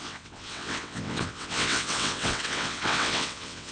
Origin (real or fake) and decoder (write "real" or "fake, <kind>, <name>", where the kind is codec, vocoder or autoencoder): fake, vocoder, WaveNeXt